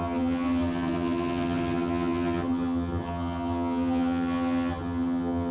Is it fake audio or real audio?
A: fake